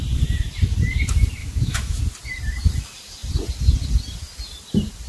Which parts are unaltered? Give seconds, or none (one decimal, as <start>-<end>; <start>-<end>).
0.0-1.4; 2.0-5.1